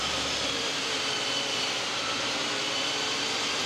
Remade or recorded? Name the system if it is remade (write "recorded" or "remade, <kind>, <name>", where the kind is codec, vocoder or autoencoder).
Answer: remade, vocoder, BigVGAN v2